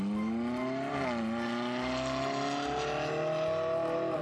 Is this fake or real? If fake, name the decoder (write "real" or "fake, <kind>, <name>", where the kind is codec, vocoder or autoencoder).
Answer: real